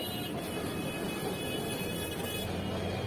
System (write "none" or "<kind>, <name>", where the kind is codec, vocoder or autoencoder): none